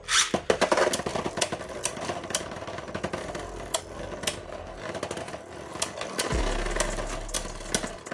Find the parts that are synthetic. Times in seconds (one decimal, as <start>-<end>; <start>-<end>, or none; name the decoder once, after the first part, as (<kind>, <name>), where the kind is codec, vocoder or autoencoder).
none